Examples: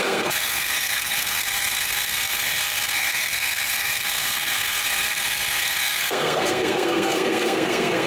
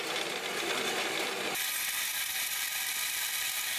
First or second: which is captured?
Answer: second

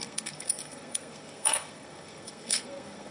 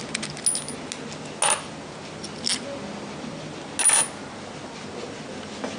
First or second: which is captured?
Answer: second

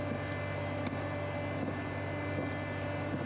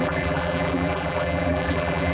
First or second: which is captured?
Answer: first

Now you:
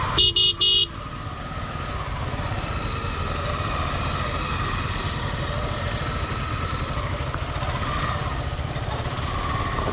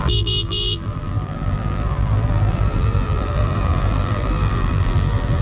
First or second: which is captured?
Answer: first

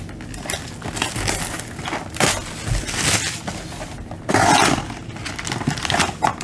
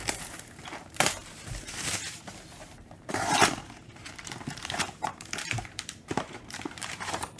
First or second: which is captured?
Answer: first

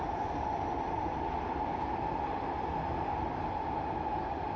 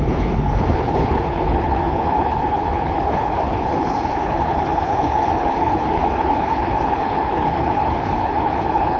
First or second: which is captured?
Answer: first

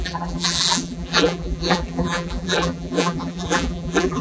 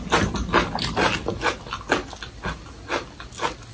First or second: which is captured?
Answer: second